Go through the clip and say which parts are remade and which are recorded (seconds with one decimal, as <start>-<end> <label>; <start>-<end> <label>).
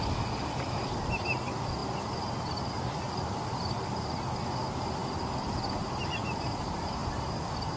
0.0-7.8 recorded